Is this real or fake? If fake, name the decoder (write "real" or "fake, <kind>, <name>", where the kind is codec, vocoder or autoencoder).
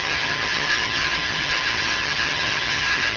fake, vocoder, HiFi-GAN